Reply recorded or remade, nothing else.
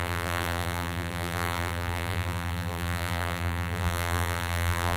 remade